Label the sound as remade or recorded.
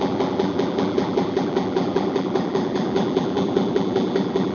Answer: remade